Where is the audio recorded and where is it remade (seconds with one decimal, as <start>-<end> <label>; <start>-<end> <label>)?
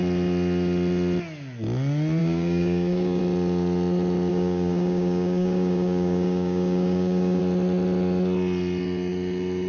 0.0-2.2 recorded; 2.2-3.2 remade; 3.2-4.3 recorded; 4.3-7.4 remade; 7.4-9.7 recorded